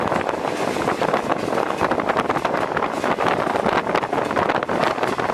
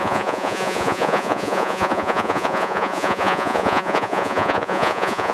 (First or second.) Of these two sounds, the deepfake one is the second